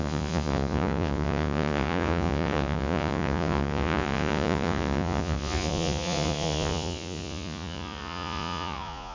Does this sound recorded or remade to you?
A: remade